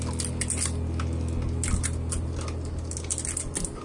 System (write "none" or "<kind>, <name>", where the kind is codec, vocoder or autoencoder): none